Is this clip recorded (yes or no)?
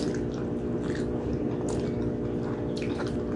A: yes